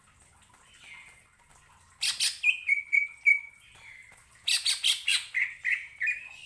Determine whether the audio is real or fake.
real